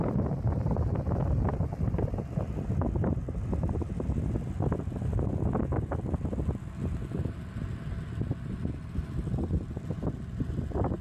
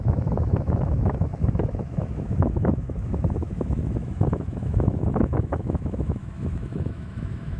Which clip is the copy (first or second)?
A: second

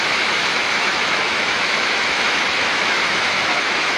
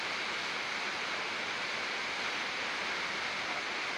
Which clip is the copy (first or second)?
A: first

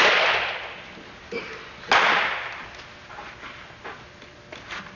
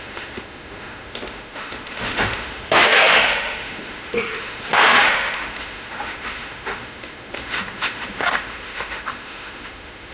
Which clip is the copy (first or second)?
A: second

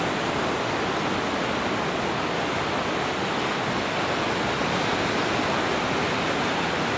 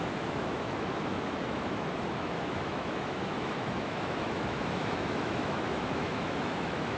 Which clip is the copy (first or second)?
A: second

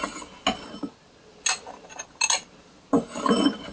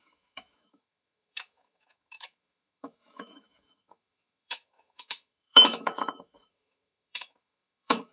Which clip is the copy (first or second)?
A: second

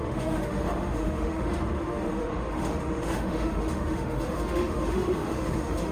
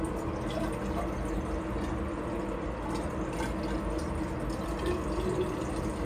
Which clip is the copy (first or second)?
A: first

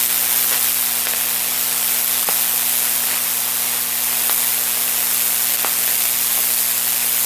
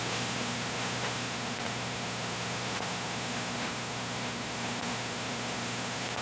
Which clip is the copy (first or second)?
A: second